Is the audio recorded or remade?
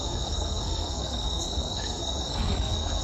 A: remade